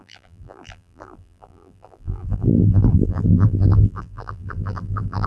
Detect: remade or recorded remade